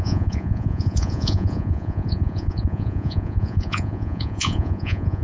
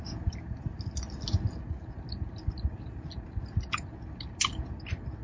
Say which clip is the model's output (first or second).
first